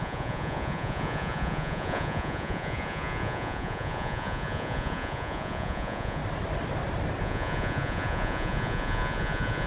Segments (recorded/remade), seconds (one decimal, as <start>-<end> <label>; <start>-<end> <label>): 0.0-6.2 remade; 6.2-7.2 recorded; 7.2-9.7 remade